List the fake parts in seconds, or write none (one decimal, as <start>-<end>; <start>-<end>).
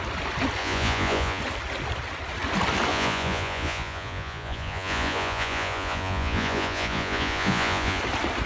0.6-1.4; 2.9-8.0